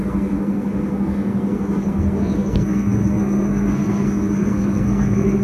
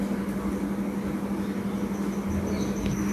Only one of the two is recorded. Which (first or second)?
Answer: second